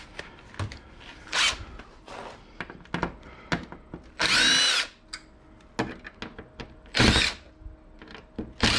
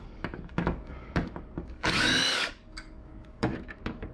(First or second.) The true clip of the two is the first